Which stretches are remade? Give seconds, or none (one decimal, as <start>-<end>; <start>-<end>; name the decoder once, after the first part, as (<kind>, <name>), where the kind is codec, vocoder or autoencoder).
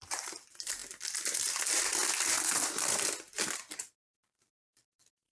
0.0-0.8 (vocoder, BigVGAN v2); 2.6-5.3